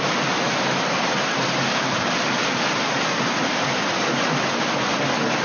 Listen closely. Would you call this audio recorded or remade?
recorded